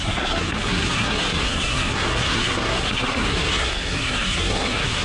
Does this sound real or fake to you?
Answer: fake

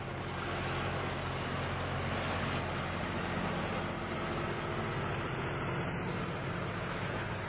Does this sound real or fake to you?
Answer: real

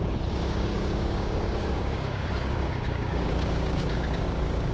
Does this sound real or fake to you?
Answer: fake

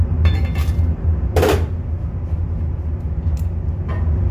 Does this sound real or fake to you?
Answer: real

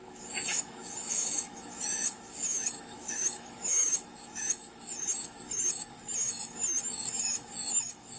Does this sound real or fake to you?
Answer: fake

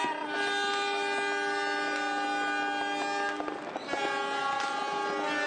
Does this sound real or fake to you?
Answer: real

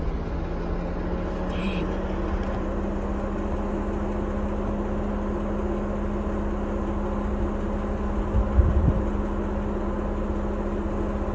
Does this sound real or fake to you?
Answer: real